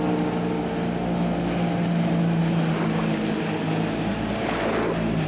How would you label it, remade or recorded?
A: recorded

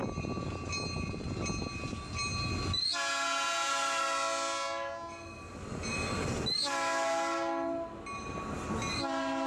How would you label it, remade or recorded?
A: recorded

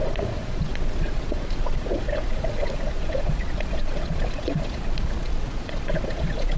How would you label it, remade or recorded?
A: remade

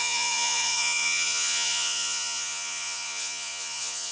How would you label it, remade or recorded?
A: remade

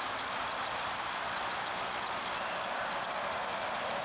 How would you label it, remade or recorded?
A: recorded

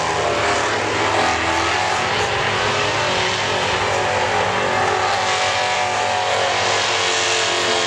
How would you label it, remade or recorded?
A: recorded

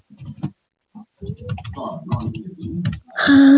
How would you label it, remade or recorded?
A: recorded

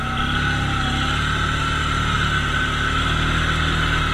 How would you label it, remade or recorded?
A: recorded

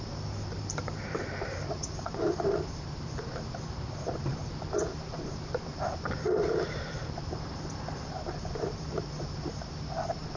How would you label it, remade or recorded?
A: remade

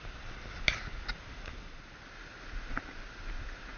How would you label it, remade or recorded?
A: recorded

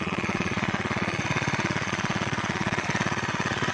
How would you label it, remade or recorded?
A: remade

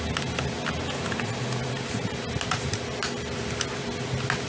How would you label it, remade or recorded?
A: recorded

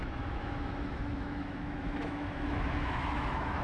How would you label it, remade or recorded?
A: remade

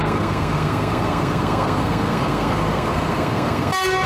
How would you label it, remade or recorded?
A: remade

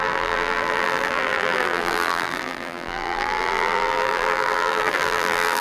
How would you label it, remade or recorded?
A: remade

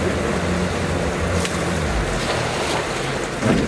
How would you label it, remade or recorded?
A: recorded